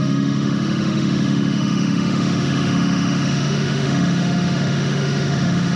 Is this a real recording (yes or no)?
no